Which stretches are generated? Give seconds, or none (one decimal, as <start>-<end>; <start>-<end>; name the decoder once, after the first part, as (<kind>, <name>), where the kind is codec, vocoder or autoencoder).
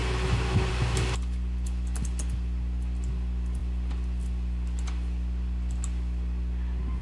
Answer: none